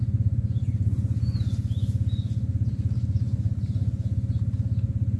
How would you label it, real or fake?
real